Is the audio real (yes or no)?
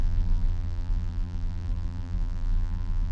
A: no